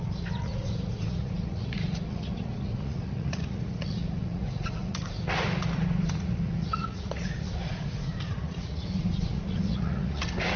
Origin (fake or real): fake